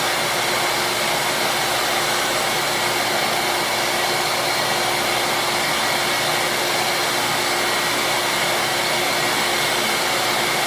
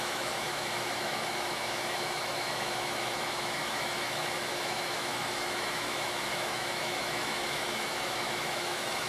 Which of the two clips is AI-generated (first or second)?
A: second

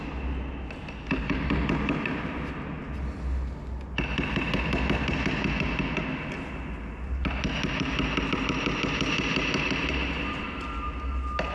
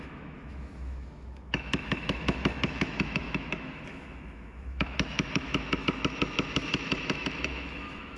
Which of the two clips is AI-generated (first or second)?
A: second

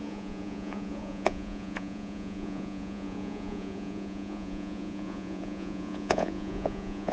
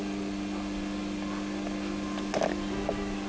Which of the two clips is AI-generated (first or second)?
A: first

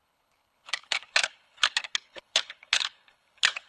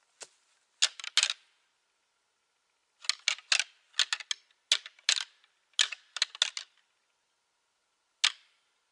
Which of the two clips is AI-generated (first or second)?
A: first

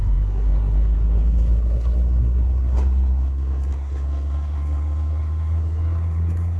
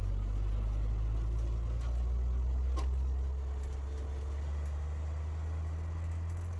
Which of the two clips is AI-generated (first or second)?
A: first